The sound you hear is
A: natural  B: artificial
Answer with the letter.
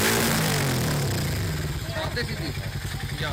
A